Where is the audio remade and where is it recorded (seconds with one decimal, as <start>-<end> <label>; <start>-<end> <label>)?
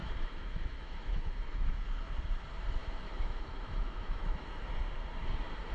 0.0-1.8 remade; 1.8-2.8 recorded; 2.8-4.7 remade; 4.7-5.7 recorded